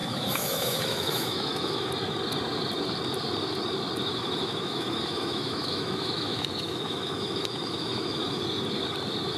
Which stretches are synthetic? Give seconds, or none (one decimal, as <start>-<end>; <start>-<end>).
0.0-1.9; 4.1-8.4